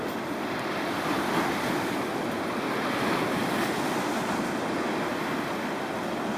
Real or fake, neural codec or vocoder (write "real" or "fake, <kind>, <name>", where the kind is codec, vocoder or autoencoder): real